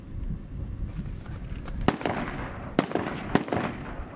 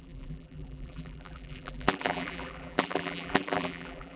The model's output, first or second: second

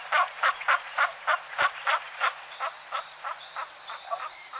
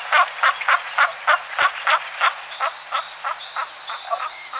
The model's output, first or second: first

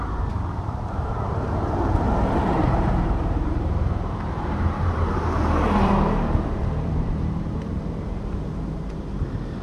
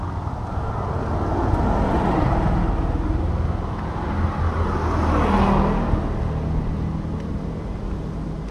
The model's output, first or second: first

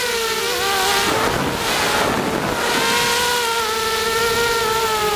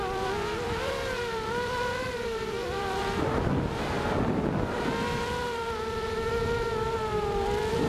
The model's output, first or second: second